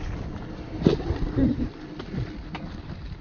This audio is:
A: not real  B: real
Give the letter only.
B